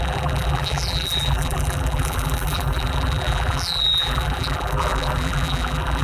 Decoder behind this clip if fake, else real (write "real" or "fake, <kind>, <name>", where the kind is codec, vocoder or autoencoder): fake, vocoder, BigVGAN v2